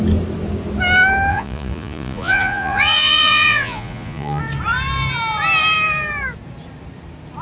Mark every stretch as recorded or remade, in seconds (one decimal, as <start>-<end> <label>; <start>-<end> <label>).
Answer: 0.0-1.3 recorded; 1.3-4.4 remade; 4.4-7.4 recorded